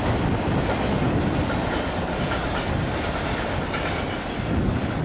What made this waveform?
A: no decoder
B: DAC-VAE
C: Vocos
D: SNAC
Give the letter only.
A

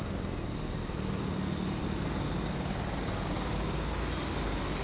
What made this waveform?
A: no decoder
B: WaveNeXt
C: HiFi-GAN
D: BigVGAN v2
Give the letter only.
A